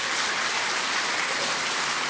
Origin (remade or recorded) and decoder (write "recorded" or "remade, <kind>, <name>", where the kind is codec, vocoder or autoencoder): recorded